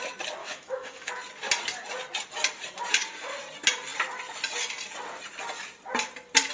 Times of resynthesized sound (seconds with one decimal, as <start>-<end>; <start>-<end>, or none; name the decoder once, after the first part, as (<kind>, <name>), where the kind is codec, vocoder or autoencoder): 0.4-1.1 (autoencoder, DAC-VAE)